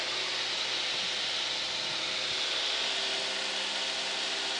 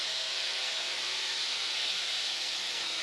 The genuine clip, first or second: first